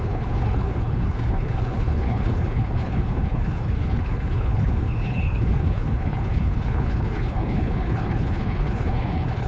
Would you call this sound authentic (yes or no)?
no